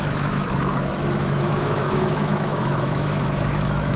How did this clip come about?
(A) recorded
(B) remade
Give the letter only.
B